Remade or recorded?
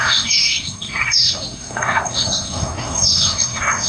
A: remade